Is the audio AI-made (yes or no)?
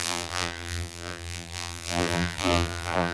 yes